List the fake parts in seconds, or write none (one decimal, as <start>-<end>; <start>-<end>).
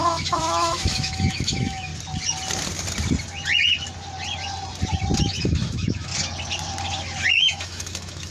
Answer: 0.0-1.9; 5.2-6.1; 7.3-8.3